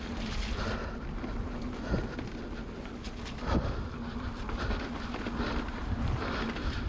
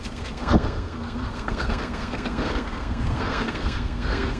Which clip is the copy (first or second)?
second